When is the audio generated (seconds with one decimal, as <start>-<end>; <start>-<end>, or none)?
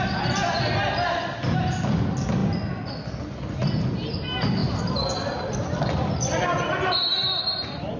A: 4.6-8.0